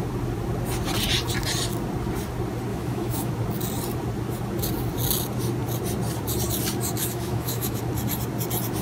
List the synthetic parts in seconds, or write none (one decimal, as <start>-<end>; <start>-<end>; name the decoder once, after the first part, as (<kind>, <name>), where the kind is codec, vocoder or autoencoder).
2.7-3.3 (autoencoder, DAC-VAE); 7.0-7.8